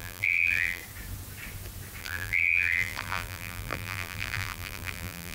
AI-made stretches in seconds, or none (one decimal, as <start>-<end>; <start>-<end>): 0.0-0.8; 2.0-5.3